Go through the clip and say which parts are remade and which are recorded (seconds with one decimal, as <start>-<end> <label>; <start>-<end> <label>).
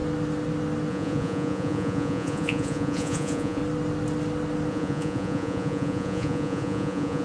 0.0-0.9 recorded; 0.9-3.6 remade; 3.6-4.7 recorded; 4.7-7.2 remade